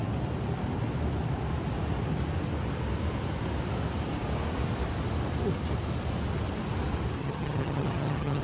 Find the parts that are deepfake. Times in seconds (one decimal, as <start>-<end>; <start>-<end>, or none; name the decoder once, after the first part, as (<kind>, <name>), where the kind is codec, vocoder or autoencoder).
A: 7.2-8.4 (vocoder, HiFi-GAN)